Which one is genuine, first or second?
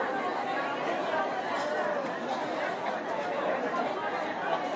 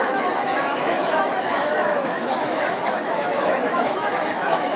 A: first